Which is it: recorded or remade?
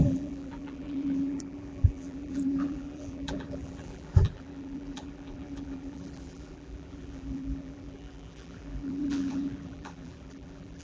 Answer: remade